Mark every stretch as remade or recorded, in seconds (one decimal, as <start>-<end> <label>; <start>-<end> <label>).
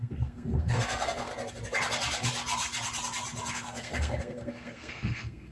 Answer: 0.0-1.3 remade; 1.3-3.5 recorded; 3.5-5.5 remade